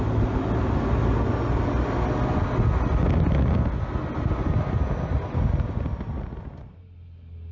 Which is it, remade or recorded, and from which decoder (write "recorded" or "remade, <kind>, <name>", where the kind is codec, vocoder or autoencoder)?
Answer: recorded